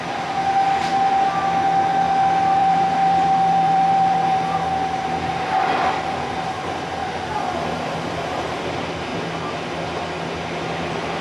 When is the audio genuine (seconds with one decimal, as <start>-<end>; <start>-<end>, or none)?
0.0-2.6; 4.6-7.0; 8.6-11.2